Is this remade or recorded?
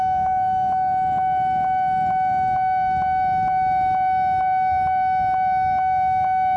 recorded